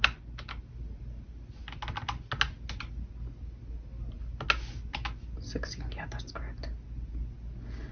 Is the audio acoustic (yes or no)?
yes